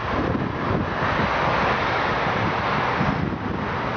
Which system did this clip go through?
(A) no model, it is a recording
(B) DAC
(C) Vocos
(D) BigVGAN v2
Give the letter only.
A